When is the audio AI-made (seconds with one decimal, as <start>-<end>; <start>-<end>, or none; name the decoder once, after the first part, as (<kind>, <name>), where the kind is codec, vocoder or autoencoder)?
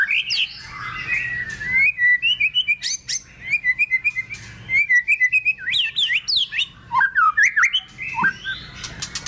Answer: 6.4-7.6 (vocoder, BigVGAN v2)